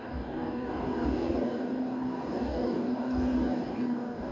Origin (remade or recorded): remade